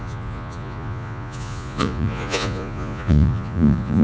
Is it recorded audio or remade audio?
remade